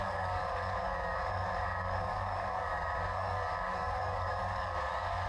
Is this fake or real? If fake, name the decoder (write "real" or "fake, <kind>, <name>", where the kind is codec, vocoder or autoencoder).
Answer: fake, codec, DAC